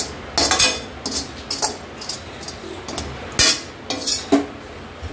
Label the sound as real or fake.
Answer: real